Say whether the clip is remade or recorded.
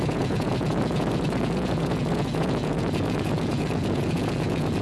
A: remade